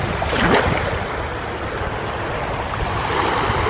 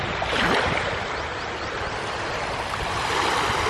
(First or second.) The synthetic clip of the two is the second